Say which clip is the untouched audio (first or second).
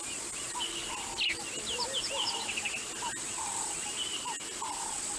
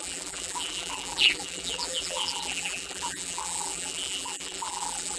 first